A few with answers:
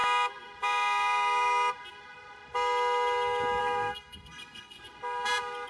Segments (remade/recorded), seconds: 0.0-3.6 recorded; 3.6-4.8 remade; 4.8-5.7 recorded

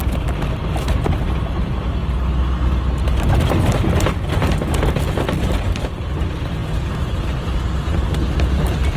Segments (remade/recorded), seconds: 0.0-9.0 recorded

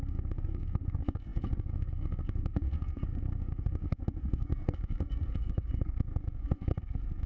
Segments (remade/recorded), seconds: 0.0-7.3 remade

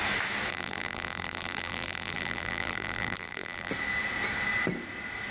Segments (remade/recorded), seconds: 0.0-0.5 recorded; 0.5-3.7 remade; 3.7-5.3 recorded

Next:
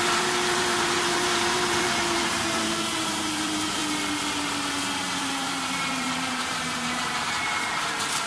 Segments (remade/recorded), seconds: 0.0-3.8 remade; 3.8-5.2 recorded; 5.2-8.3 remade

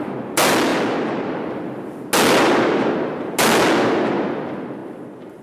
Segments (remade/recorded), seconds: 0.0-5.4 recorded

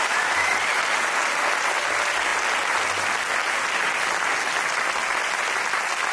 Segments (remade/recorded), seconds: 0.0-6.1 recorded